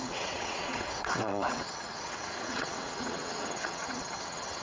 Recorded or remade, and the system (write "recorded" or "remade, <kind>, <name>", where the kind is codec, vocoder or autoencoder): remade, vocoder, WaveNeXt